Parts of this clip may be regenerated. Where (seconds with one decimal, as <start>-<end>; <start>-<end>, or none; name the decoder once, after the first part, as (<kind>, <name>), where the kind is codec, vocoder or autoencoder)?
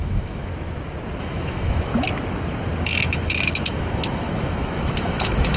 0.0-0.5 (autoencoder, DAC-VAE); 1.2-1.9; 3.0-5.6